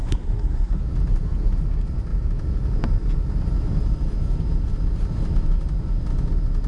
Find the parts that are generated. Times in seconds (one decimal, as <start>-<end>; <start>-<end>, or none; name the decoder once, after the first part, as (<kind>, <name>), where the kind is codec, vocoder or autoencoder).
0.0-0.8 (codec, SNAC)